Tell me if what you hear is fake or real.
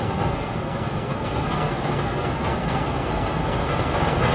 fake